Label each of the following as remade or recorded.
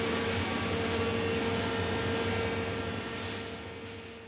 recorded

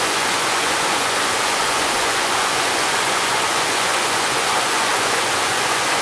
remade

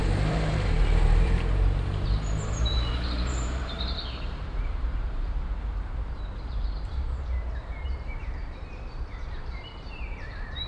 remade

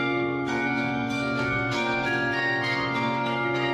remade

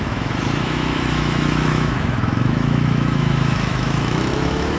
remade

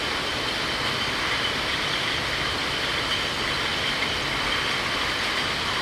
recorded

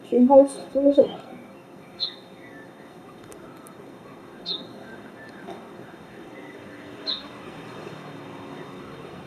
remade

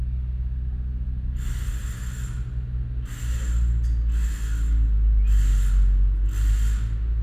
recorded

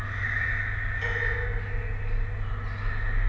recorded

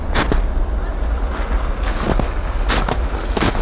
recorded